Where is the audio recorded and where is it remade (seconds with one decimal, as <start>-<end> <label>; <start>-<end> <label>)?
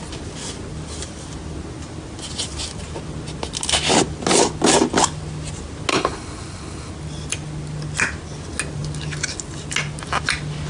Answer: 0.0-5.9 recorded; 5.9-6.9 remade; 6.9-10.7 recorded